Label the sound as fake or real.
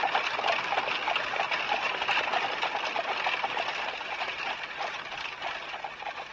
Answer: real